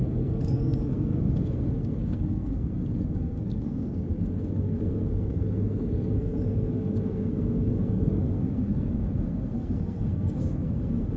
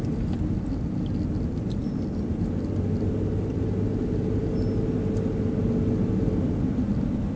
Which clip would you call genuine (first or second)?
second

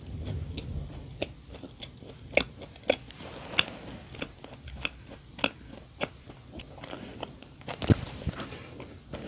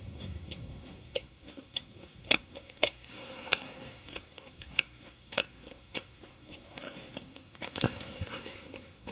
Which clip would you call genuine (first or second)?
first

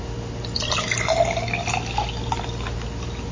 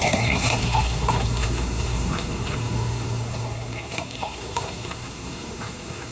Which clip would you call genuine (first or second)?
first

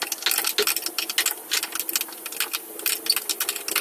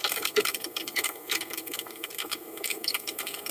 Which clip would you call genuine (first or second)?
first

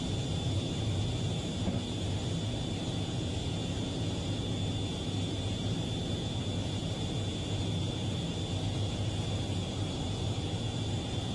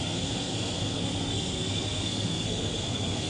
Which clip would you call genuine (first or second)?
first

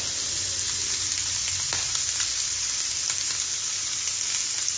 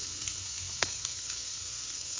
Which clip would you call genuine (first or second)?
first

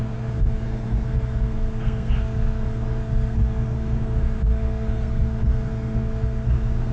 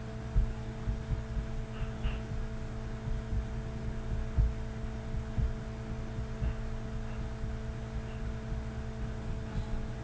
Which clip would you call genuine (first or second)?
second